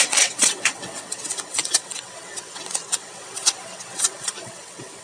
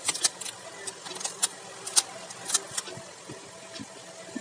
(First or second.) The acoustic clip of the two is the second